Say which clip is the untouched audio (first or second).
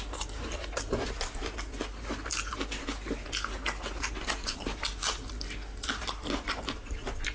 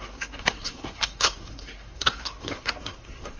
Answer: first